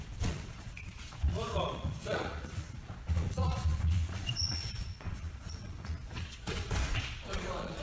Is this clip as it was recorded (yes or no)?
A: no